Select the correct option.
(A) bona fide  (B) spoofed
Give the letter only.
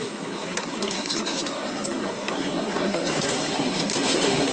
B